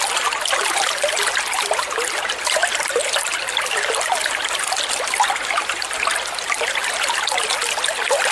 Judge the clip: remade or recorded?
recorded